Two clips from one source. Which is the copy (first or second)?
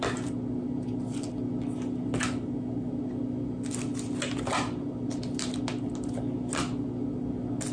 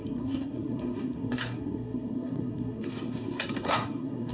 second